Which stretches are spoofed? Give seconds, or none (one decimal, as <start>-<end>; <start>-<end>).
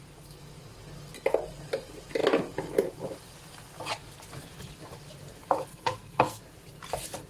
5.7-6.4